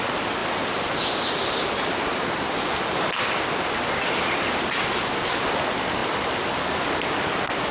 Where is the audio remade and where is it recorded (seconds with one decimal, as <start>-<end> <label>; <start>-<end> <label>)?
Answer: 0.0-7.7 recorded